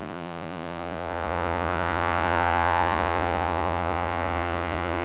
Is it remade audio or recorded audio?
remade